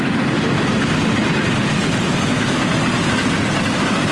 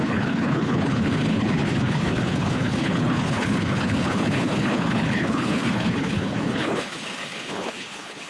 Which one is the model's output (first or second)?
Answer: second